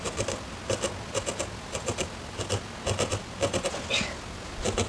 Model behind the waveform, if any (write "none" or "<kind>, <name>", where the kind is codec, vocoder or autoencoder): none